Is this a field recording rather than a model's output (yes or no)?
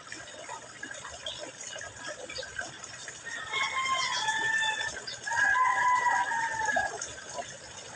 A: yes